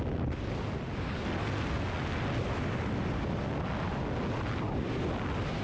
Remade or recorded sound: recorded